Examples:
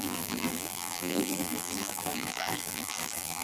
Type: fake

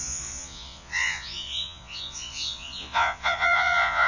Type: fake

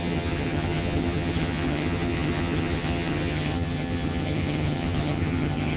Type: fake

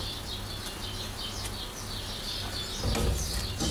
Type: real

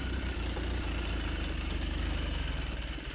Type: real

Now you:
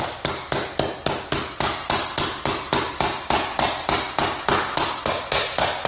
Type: real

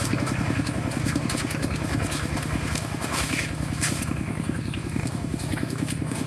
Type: fake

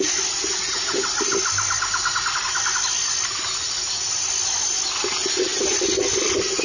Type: real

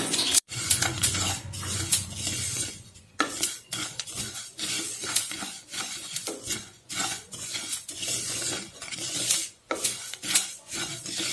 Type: fake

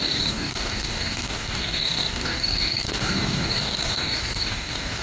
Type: fake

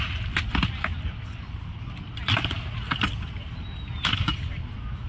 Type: real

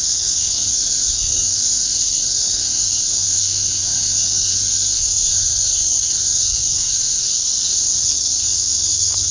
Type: fake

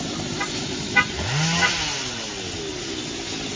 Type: real